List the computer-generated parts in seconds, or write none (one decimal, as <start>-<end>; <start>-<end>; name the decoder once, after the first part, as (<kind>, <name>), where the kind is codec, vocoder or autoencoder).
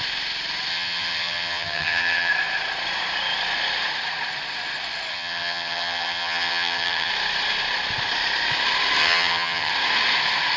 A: 0.7-2.3 (vocoder, HiFi-GAN); 5.1-7.1; 9.0-9.7